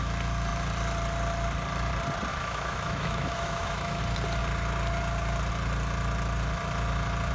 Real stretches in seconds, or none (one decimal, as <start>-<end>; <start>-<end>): 0.0-2.3; 4.0-7.3